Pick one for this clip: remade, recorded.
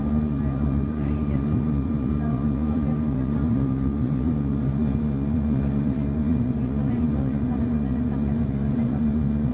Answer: remade